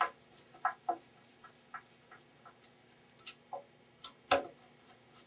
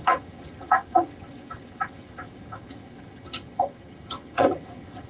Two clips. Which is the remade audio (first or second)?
second